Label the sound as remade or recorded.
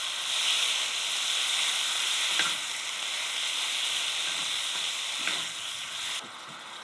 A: recorded